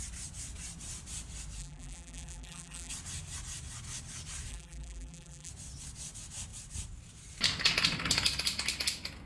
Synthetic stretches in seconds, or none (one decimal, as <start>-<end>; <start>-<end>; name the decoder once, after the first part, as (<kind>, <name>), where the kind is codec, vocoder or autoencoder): 1.6-2.9 (vocoder, BigVGAN v2); 4.5-5.5